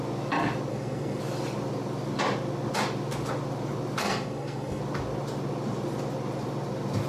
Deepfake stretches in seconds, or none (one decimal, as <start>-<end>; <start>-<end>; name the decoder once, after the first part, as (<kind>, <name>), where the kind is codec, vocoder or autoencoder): 0.7-1.2 (codec, SNAC); 4.0-4.8